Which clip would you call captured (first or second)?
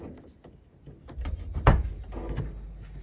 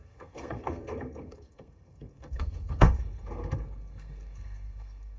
first